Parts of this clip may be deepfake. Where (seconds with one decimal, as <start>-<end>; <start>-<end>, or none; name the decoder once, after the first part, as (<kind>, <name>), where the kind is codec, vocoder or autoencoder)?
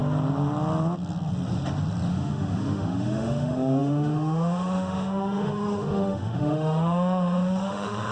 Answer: 2.1-8.1 (autoencoder, DAC-VAE)